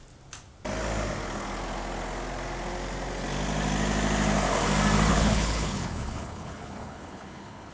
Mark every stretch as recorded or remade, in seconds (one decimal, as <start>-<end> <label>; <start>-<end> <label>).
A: 0.0-5.1 recorded; 5.1-7.7 remade